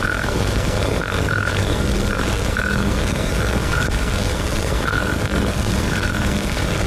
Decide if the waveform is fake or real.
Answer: fake